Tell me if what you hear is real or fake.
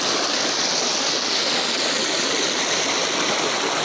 real